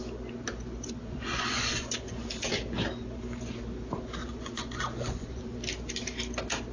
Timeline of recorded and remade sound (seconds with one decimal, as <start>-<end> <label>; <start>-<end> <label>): 0.0-1.0 recorded; 1.0-2.3 remade; 2.3-4.2 recorded; 4.2-5.4 remade; 5.4-6.7 recorded